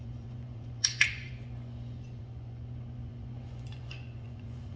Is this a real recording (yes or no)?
no